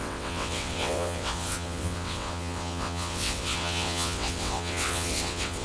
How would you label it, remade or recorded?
remade